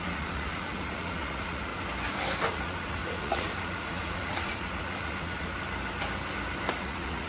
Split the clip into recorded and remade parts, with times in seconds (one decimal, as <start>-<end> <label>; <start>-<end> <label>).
0.0-1.7 remade; 1.7-2.5 recorded; 2.5-5.5 remade; 5.5-6.7 recorded; 6.7-7.3 remade